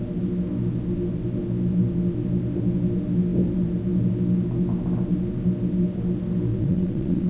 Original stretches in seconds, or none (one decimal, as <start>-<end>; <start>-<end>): 0.0-6.5

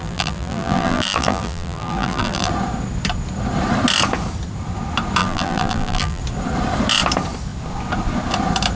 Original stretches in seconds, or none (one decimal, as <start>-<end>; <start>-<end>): 2.5-5.2; 6.2-8.7

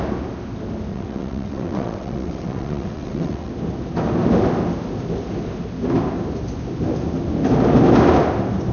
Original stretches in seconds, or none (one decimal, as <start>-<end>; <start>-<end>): 0.0-0.9; 3.5-8.7

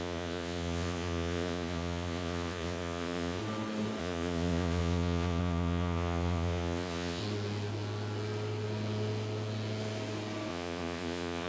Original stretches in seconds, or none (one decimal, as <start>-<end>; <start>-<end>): 3.4-4.0; 7.2-10.5